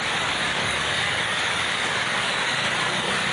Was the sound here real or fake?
fake